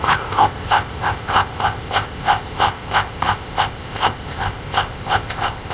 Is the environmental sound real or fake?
fake